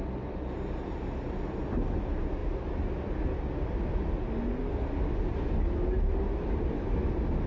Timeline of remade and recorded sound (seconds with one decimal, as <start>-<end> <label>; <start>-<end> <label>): 0.0-7.5 recorded